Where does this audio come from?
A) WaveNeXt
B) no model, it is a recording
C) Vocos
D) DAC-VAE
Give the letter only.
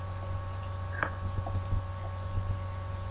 C